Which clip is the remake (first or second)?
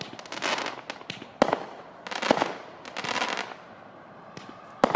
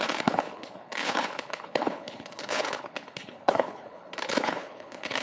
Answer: second